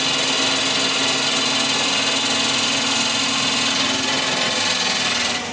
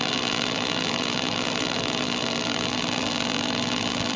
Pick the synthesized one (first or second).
second